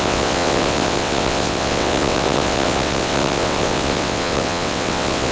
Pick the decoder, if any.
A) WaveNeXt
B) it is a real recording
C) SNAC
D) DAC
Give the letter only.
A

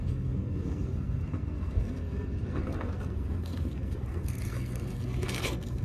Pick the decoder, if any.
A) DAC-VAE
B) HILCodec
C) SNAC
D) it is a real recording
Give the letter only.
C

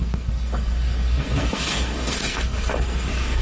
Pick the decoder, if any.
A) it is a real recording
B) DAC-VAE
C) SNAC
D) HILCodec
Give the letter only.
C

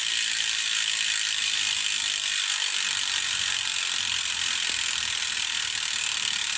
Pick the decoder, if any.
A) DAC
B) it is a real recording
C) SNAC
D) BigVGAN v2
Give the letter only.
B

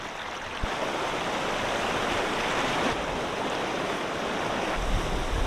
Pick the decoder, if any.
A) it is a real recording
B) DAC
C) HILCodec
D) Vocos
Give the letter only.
A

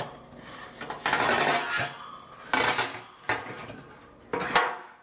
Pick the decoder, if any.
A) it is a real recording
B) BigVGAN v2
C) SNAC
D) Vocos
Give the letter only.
A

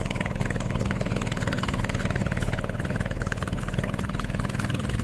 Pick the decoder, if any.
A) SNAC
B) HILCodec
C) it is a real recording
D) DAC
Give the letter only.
B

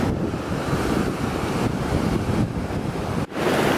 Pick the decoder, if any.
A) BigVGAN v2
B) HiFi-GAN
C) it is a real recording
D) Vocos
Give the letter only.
A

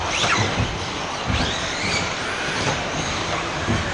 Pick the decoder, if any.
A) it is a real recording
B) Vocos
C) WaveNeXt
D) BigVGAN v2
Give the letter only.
A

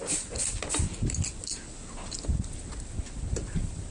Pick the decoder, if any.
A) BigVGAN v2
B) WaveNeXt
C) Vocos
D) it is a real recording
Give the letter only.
D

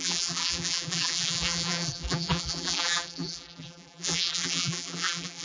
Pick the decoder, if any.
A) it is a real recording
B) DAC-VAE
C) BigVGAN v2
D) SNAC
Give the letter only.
C